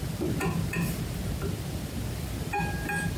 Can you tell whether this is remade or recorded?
recorded